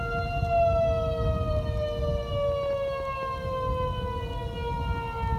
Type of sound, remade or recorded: recorded